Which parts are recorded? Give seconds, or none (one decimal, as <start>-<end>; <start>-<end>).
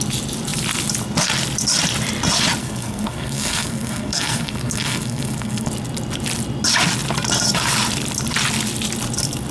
0.0-2.6; 5.7-9.5